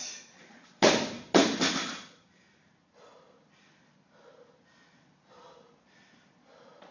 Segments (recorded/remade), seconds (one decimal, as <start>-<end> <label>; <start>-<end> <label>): 0.0-6.9 recorded